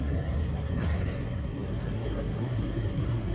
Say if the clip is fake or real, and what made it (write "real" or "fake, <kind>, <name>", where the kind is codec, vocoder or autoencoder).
fake, codec, SNAC